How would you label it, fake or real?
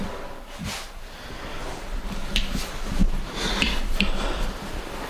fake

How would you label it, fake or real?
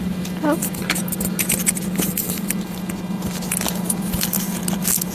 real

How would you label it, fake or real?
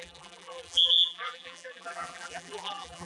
fake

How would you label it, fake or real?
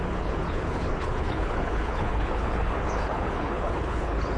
fake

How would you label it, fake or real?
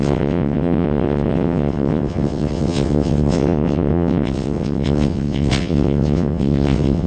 fake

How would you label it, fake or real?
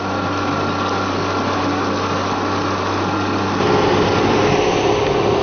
real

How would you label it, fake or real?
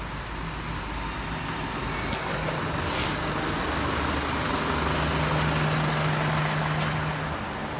real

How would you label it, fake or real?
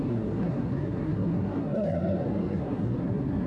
fake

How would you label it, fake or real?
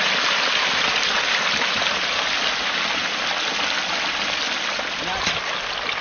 real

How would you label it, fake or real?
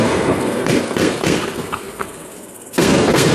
fake